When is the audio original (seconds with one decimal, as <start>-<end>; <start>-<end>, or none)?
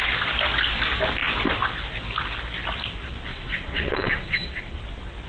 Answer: 0.0-3.3; 4.8-5.3